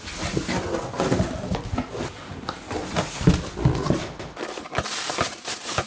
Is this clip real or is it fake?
real